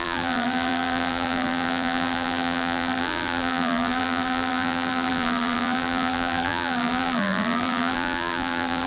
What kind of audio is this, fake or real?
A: fake